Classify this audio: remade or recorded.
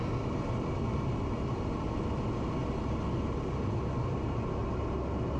recorded